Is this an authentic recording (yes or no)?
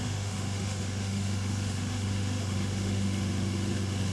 no